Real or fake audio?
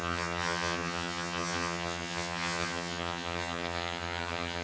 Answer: fake